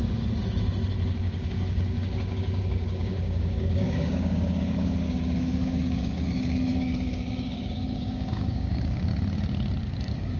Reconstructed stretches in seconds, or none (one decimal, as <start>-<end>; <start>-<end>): 1.1-9.1; 9.8-10.4